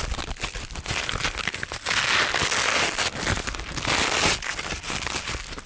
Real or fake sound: real